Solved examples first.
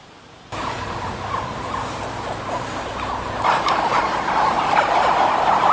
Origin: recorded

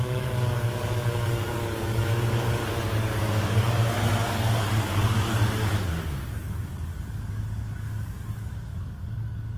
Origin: remade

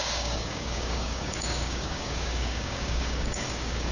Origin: remade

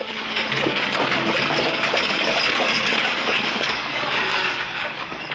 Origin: remade